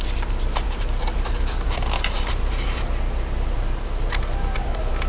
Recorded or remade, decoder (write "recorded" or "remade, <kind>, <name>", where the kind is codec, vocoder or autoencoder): recorded